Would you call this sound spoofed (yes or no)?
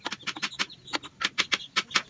no